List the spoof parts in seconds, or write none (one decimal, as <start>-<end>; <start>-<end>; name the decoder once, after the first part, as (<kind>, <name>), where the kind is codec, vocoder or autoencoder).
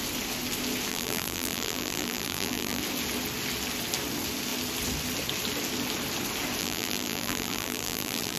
0.9-2.8 (vocoder, BigVGAN v2); 6.6-8.4